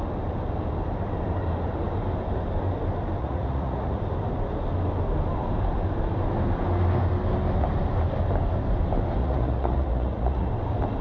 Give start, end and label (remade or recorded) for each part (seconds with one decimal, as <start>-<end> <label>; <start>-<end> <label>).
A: 0.0-3.2 recorded; 3.2-4.0 remade; 4.0-9.2 recorded; 9.2-10.5 remade; 10.5-11.0 recorded